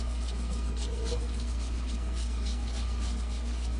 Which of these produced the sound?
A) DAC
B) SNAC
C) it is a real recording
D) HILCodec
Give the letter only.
B